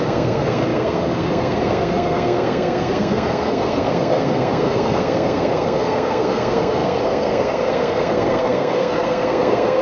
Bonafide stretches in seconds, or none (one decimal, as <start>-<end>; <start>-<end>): none